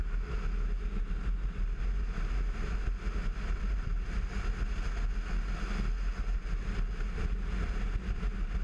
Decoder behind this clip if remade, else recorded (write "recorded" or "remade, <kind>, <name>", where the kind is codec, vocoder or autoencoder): recorded